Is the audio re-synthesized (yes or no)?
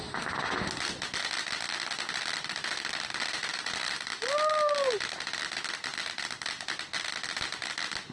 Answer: no